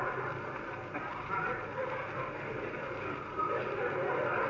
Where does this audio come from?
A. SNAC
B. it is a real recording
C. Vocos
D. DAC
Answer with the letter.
B